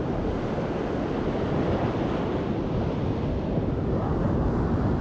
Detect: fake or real real